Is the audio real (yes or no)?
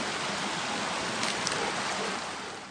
yes